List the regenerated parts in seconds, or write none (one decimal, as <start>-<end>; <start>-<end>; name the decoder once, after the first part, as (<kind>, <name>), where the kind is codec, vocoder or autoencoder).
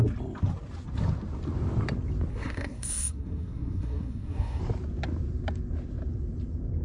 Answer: 2.3-4.6 (codec, SNAC)